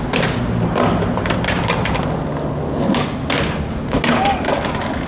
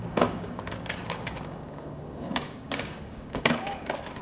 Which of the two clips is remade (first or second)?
second